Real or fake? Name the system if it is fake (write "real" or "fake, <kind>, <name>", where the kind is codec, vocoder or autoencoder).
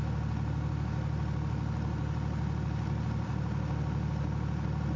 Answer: real